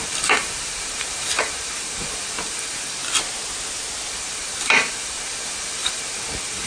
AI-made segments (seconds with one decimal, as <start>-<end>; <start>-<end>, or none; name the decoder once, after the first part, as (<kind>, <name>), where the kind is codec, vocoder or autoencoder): 0.0-3.0 (vocoder, BigVGAN v2); 4.1-6.7